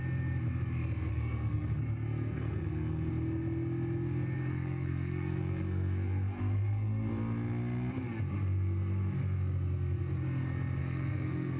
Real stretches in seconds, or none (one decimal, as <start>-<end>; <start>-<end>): 0.0-1.1; 3.1-4.5; 7.1-10.8